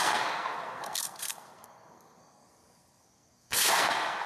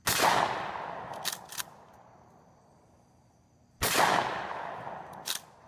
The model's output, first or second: first